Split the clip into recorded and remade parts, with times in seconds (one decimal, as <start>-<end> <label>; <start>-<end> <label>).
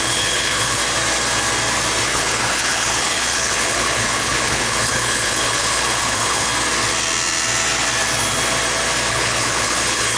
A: 0.0-0.8 remade; 0.8-2.0 recorded; 2.0-6.5 remade; 6.5-9.1 recorded; 9.1-10.2 remade